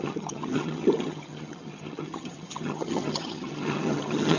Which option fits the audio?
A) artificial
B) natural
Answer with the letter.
A